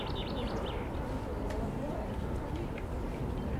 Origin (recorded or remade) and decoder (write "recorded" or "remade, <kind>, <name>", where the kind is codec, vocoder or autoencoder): recorded